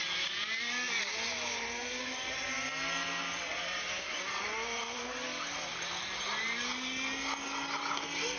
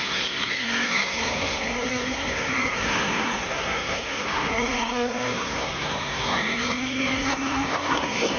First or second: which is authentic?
first